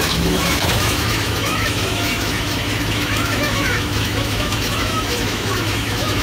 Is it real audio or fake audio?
fake